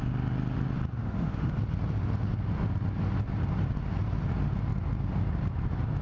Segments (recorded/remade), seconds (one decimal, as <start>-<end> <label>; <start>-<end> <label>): 0.0-1.0 recorded; 1.0-1.5 remade; 1.5-6.0 recorded